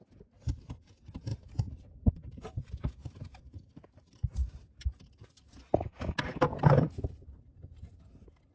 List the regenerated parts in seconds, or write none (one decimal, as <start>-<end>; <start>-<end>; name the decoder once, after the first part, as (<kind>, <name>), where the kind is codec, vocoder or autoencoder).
1.3-5.3 (vocoder, BigVGAN v2); 6.3-6.8